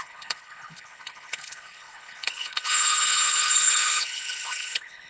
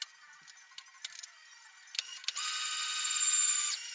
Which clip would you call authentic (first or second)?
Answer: second